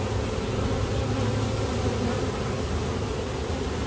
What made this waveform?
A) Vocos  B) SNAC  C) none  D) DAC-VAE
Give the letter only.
C